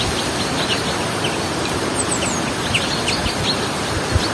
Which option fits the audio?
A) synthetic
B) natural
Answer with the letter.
B